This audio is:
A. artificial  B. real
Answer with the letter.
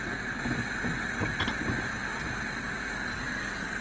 B